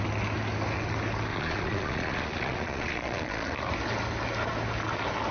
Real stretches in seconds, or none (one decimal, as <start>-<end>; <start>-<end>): 0.0-1.3; 3.6-5.3